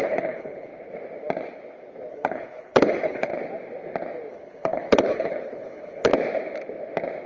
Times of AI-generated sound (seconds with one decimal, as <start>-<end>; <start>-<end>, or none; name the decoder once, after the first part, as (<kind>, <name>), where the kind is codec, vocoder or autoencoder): 0.0-0.7 (codec, HILCodec); 2.1-3.3; 4.3-6.1